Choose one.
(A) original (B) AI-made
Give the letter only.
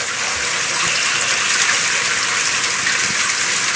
A